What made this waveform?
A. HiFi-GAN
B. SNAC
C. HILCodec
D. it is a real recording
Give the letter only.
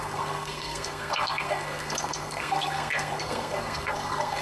B